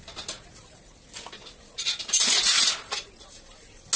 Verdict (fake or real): real